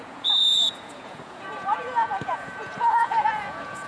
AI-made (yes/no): yes